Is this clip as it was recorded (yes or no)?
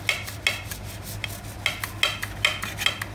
yes